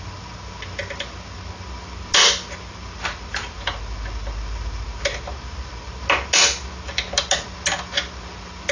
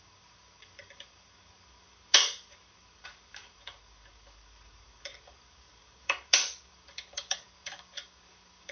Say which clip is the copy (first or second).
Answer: second